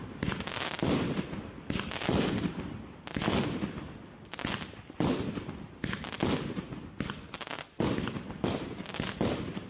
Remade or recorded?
recorded